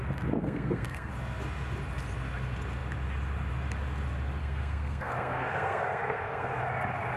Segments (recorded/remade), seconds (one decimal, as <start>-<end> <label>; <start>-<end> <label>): 0.0-0.4 recorded; 0.4-1.1 remade; 1.1-4.4 recorded; 4.4-6.6 remade; 6.6-7.2 recorded